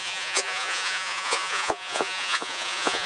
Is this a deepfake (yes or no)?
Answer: yes